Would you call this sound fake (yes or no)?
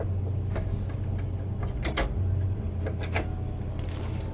no